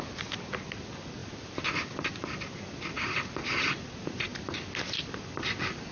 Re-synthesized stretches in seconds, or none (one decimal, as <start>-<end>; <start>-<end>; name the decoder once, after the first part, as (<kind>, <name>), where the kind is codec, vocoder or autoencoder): none

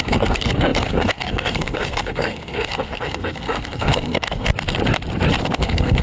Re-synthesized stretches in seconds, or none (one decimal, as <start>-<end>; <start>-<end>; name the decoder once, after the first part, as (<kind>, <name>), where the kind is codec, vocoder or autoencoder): 0.0-4.5 (codec, SNAC); 5.4-6.0

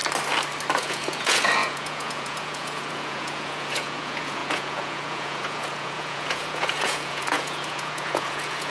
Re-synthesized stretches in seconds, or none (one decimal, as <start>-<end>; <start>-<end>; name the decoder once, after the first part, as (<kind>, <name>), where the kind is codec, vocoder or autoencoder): 0.8-8.7 (vocoder, Vocos)

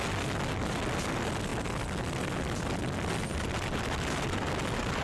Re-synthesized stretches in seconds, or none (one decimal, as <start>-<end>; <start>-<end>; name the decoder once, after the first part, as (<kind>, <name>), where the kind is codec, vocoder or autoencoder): none

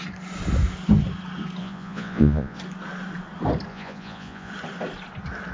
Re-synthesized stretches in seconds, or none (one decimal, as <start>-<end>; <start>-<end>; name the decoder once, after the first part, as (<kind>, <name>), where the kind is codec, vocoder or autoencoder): 1.6-2.6 (vocoder, Vocos); 3.7-4.5

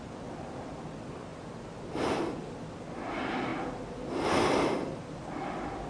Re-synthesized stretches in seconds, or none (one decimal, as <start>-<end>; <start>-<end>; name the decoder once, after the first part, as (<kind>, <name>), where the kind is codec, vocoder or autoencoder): none